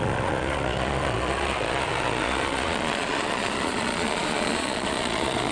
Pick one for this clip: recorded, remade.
remade